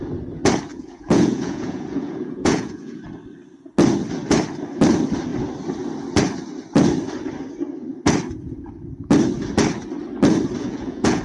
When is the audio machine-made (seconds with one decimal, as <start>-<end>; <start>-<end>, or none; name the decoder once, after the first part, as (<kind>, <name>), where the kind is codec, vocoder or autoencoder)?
0.7-3.0 (vocoder, Vocos); 10.6-11.2